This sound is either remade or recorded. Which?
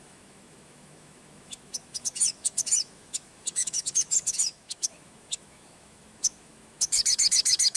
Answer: remade